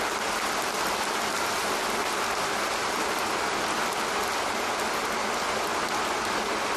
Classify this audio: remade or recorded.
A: recorded